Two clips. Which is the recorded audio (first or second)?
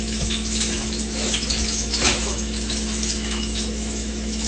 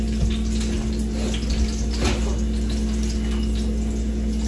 second